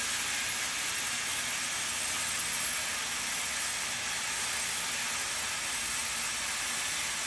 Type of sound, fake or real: real